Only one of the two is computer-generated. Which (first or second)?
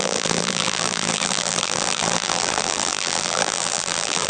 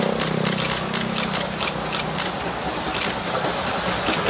first